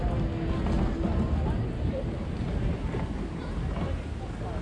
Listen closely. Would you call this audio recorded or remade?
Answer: recorded